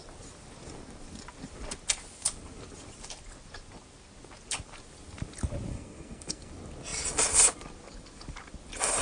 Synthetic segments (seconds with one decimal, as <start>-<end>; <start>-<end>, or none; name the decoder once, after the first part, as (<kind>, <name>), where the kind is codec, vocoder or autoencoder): 5.7-6.5 (codec, SNAC)